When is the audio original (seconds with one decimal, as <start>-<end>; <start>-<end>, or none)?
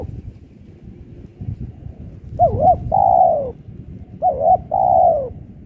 0.0-1.3; 3.9-4.5